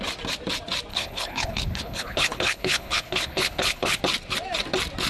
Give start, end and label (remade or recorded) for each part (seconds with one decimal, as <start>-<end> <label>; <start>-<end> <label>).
0.0-0.9 recorded; 0.9-4.0 remade; 4.0-5.1 recorded